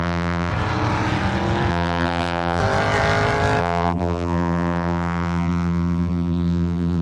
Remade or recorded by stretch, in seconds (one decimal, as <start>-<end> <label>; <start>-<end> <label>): 0.0-0.5 remade; 0.5-1.7 recorded; 1.7-2.6 remade; 2.6-3.6 recorded; 3.6-7.0 remade